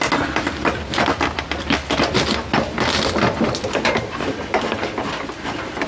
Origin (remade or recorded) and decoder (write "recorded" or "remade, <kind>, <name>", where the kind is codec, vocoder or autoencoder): recorded